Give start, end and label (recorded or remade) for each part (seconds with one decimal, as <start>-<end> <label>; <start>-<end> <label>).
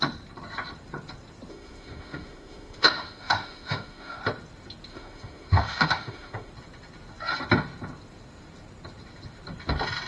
0.0-1.5 recorded; 1.5-4.2 remade; 4.2-4.9 recorded; 4.9-6.5 remade; 6.5-10.1 recorded